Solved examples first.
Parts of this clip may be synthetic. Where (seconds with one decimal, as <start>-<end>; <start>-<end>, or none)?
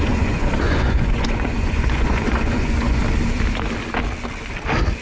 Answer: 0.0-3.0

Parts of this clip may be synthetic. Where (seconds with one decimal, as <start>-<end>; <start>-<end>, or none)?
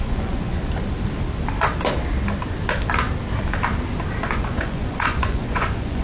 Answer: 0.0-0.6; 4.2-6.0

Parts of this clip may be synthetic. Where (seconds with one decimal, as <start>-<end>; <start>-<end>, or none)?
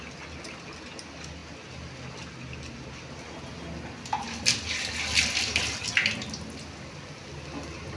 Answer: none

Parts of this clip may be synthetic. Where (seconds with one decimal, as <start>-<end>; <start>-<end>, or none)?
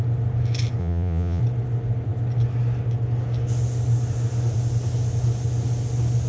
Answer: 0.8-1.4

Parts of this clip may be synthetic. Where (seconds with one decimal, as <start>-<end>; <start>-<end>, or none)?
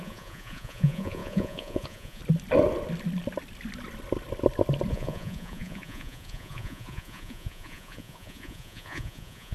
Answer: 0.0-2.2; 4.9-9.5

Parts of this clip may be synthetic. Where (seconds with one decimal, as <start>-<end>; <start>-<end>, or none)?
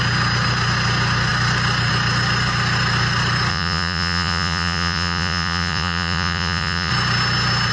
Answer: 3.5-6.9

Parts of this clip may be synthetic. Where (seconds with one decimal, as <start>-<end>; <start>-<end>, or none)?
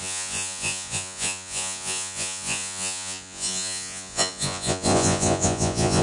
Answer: 0.0-6.0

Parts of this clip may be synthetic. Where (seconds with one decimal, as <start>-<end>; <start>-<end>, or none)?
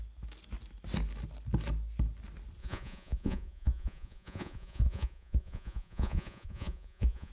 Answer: 2.6-7.3